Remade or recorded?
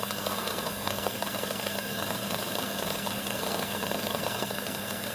remade